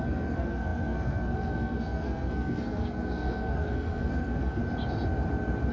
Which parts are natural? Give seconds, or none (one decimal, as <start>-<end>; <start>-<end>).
4.6-5.7